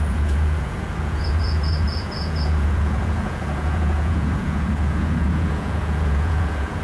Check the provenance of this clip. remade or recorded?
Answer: remade